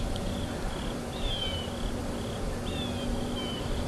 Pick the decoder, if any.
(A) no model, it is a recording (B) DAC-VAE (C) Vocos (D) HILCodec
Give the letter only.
A